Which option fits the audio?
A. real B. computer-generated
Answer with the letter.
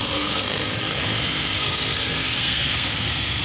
B